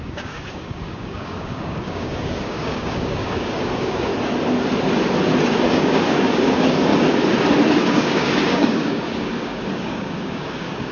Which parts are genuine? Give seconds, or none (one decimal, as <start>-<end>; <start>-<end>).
4.1-5.5; 6.9-7.8